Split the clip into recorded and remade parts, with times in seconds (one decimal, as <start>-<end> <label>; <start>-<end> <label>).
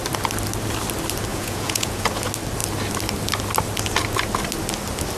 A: 0.0-1.3 recorded; 1.3-2.1 remade; 2.1-5.2 recorded